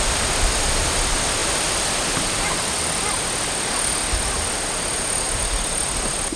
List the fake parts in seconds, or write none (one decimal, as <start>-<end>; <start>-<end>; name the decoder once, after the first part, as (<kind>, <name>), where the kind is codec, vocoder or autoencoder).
none